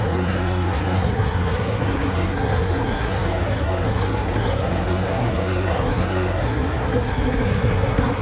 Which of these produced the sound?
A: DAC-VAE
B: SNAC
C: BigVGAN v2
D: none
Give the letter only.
B